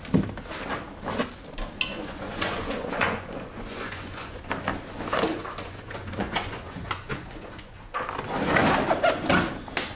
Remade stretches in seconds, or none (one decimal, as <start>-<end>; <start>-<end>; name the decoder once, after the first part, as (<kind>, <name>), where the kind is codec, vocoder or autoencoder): 1.9-4.4 (vocoder, Vocos); 5.3-7.8